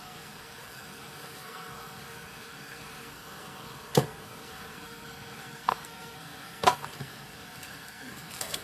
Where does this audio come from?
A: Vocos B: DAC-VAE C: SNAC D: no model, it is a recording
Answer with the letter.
C